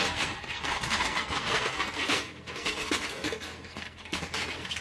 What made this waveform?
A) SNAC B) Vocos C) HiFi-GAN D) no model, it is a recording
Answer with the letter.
A